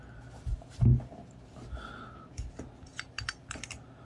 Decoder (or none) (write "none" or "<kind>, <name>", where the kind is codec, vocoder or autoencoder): none